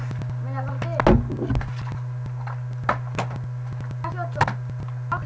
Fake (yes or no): no